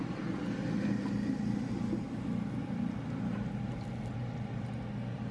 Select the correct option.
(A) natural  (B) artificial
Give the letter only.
A